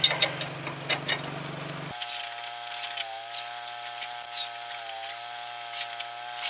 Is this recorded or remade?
recorded